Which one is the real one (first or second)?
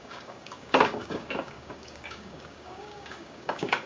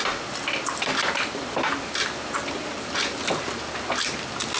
second